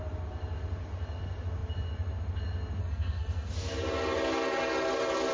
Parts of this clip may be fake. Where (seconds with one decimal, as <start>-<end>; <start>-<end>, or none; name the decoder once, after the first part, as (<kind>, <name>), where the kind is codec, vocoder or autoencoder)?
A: 2.8-3.5 (codec, SNAC)